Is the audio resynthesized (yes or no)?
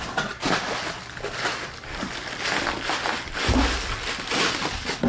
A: no